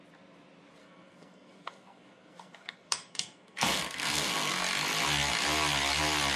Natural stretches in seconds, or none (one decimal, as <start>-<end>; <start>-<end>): 0.0-0.8; 4.6-6.4